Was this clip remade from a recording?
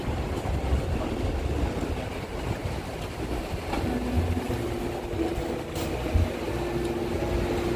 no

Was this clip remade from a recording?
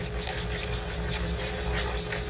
no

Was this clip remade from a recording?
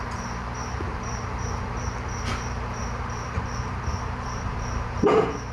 yes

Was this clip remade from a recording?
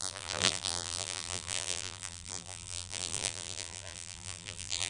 yes